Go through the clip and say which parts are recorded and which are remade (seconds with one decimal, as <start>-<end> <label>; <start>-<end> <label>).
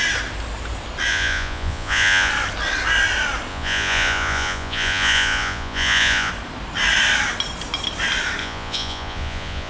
0.0-1.1 recorded; 1.1-2.3 remade; 2.3-3.5 recorded; 3.5-6.3 remade; 6.3-8.4 recorded; 8.4-9.7 remade